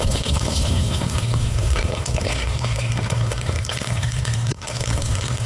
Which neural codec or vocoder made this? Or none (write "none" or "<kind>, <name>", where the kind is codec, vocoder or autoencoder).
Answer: codec, SNAC